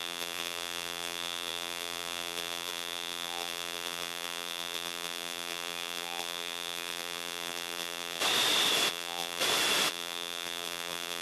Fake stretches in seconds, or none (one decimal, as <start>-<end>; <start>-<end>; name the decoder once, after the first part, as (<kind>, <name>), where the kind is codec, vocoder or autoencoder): 0.0-8.2 (vocoder, BigVGAN v2); 8.9-9.4; 9.9-11.2